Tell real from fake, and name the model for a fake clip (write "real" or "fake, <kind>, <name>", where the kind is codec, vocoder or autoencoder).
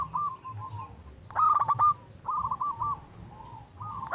real